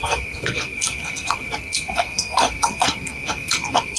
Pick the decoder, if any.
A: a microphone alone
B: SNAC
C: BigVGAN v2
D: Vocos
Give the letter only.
B